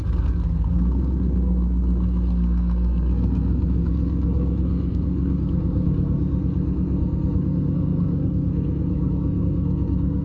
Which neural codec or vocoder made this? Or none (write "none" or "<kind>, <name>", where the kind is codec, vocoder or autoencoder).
codec, SNAC